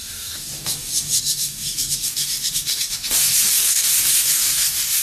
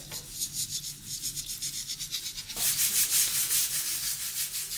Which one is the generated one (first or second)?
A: first